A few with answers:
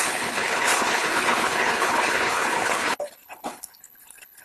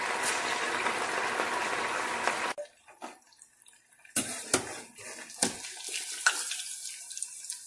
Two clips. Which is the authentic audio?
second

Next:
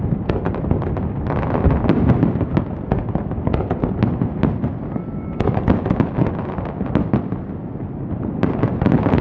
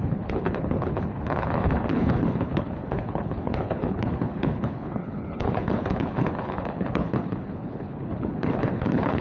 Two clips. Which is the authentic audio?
first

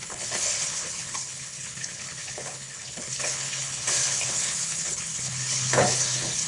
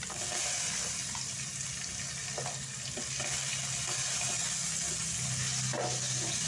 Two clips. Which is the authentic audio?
second